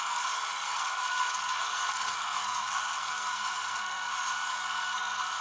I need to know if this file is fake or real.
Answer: fake